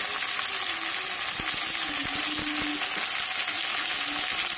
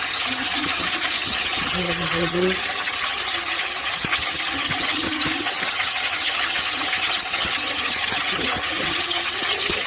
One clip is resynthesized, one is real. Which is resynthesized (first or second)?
second